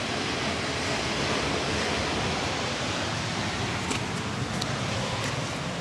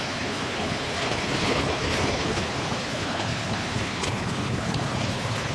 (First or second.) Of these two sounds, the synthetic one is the second